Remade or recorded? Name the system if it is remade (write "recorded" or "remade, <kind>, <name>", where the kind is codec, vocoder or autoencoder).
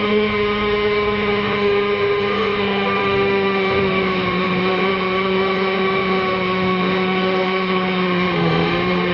remade, autoencoder, DAC-VAE